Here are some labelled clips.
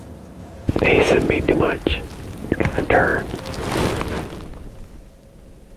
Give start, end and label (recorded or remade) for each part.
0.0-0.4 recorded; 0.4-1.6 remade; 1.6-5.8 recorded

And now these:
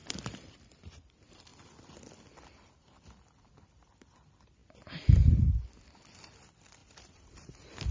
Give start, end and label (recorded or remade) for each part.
0.0-0.6 recorded; 0.6-1.5 remade; 1.5-2.3 recorded; 2.3-7.9 remade